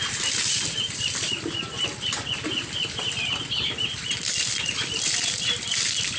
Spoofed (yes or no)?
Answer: no